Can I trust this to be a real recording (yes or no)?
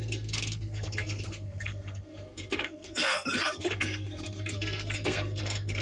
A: no